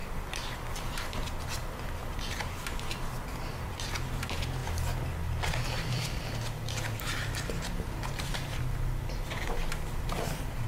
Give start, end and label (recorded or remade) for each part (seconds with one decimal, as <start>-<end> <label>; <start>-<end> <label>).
0.0-4.6 remade; 4.6-5.9 recorded; 5.9-10.7 remade